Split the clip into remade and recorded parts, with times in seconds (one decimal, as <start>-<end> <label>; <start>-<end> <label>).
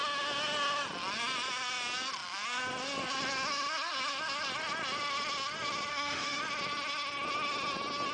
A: 0.0-5.9 recorded; 5.9-6.4 remade; 6.4-8.1 recorded